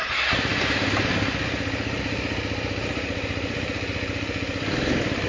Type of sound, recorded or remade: recorded